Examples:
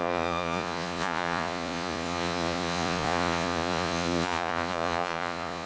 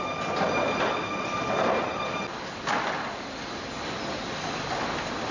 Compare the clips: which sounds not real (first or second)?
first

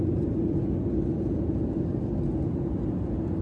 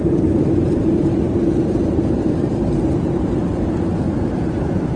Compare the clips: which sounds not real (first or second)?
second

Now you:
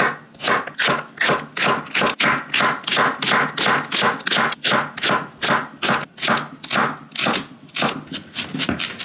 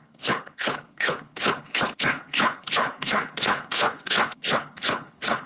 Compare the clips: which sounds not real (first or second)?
second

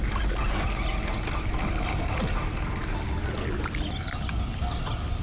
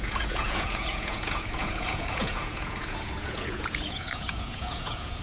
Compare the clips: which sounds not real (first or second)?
second